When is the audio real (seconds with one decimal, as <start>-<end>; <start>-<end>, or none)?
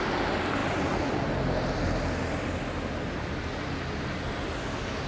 0.0-5.1